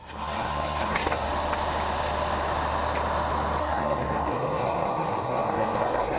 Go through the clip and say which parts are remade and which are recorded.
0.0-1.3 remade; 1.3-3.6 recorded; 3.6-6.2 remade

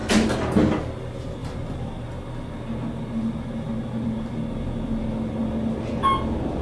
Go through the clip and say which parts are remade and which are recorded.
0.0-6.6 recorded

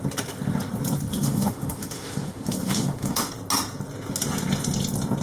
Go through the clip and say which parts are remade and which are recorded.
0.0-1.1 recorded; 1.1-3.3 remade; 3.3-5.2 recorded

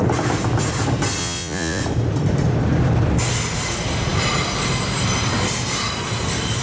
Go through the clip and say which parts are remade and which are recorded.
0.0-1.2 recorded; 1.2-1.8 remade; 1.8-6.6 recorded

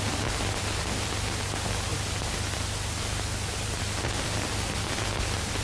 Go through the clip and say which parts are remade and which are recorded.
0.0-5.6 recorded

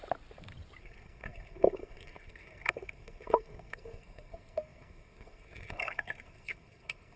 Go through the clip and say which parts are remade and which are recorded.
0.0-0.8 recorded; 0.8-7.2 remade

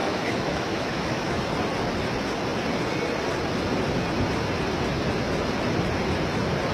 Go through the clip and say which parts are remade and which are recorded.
0.0-1.4 remade; 1.4-6.7 recorded

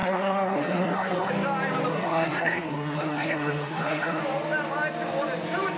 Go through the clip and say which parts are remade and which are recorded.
0.0-1.3 remade; 1.3-1.9 recorded; 1.9-4.2 remade; 4.2-5.8 recorded